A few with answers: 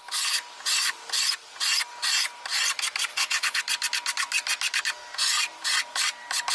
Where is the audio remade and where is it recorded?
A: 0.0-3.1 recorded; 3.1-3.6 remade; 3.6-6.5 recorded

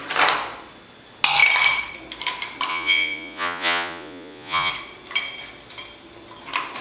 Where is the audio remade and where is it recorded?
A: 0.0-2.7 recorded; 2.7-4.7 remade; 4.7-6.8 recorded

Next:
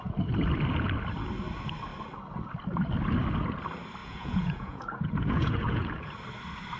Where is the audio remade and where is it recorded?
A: 0.0-4.0 recorded; 4.0-6.1 remade; 6.1-6.8 recorded